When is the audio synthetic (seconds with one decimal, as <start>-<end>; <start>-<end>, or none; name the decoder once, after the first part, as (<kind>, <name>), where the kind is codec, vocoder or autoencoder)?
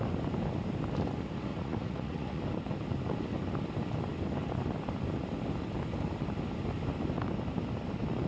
1.5-2.4 (vocoder, Vocos)